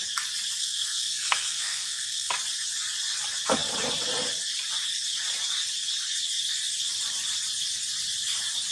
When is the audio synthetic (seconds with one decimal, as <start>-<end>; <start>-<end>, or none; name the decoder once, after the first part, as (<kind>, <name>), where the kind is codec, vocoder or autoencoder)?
0.6-2.3 (codec, SNAC)